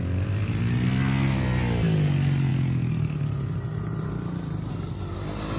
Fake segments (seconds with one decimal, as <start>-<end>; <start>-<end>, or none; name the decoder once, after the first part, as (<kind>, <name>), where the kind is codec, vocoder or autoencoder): none

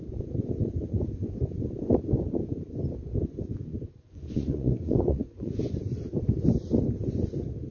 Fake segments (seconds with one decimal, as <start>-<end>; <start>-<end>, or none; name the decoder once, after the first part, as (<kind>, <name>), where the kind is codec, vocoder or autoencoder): 3.7-5.8 (vocoder, Vocos)

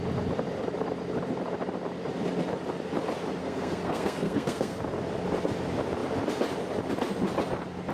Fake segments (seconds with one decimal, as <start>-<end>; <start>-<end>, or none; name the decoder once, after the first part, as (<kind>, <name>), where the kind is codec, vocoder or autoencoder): 3.4-4.8 (codec, SNAC)

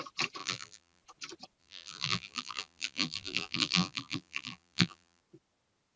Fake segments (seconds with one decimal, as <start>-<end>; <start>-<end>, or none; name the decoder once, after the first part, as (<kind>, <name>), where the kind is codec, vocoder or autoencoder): 0.4-1.0 (vocoder, BigVGAN v2); 1.6-5.2

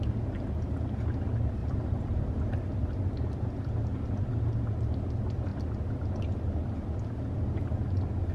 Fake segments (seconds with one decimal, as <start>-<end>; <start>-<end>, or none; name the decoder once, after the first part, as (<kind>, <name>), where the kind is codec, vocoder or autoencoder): 1.6-2.7 (vocoder, BigVGAN v2); 5.5-6.2

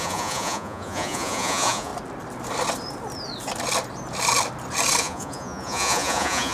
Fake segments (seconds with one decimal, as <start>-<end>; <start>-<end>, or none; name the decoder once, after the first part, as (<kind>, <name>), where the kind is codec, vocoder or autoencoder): 0.0-1.9 (vocoder, Vocos); 5.0-6.5